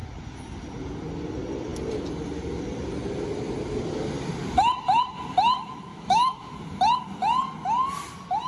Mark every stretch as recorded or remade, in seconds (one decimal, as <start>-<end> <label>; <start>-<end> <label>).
0.0-5.9 recorded; 5.9-6.5 remade; 6.5-8.5 recorded